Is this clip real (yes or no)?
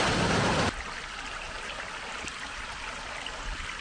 yes